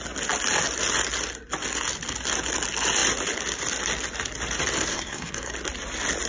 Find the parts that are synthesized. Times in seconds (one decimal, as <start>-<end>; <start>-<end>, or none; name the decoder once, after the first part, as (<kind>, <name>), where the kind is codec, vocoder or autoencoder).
4.9-5.5 (codec, SNAC)